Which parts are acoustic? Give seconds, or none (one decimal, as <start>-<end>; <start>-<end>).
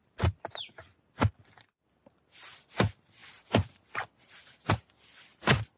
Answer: 0.0-5.8